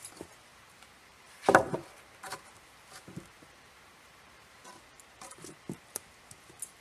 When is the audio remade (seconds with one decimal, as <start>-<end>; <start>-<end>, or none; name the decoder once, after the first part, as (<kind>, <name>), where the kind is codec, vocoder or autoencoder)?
0.5-4.6 (vocoder, BigVGAN v2)